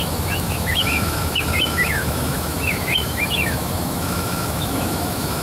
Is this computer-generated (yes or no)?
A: yes